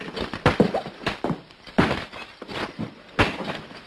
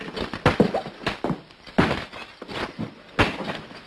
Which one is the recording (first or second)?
second